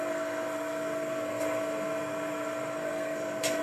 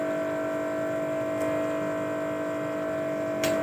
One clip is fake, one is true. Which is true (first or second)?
second